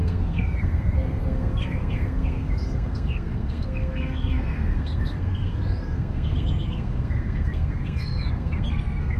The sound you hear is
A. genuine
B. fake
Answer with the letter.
B